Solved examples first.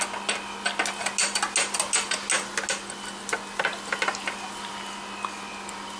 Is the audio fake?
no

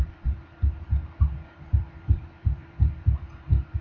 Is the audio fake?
yes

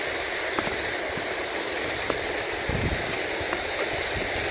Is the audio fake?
no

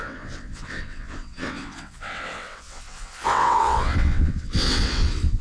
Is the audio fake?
yes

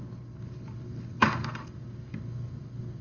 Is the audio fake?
no